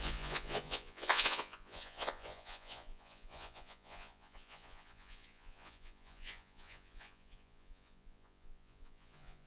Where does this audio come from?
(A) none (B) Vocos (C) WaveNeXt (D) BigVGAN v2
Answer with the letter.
B